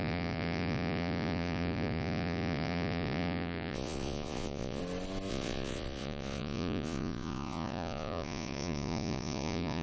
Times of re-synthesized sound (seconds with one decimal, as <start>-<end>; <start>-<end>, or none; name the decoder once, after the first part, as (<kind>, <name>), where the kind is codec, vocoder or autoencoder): 0.0-4.8 (vocoder, Vocos); 5.3-9.8